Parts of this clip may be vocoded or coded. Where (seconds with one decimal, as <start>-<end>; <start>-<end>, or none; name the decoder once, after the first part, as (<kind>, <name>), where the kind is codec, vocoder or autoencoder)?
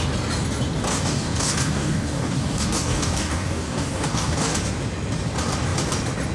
0.9-4.6 (codec, DAC)